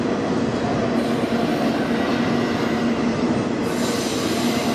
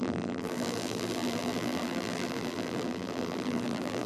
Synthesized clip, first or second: second